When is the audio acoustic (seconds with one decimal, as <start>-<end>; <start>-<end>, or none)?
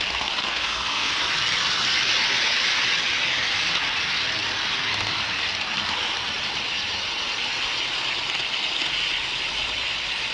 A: 0.0-0.4; 1.1-10.3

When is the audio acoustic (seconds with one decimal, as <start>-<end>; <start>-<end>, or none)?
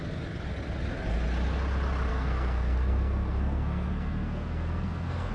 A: 0.0-2.1